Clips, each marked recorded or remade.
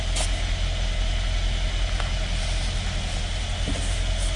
recorded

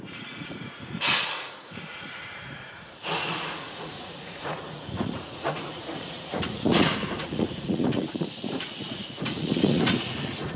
remade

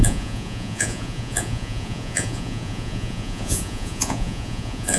remade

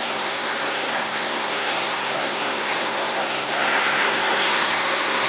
remade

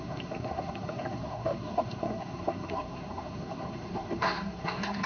remade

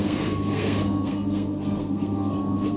remade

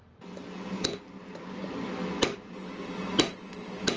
recorded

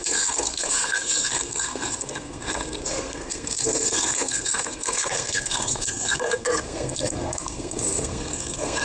remade